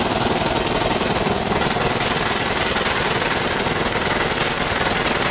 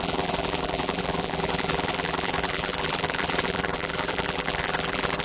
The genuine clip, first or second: first